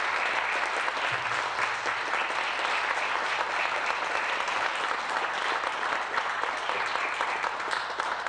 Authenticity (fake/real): real